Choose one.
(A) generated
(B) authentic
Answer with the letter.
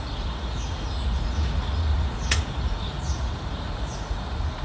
A